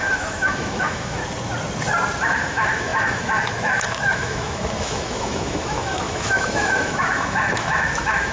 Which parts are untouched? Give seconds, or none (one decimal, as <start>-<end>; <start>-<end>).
1.2-2.2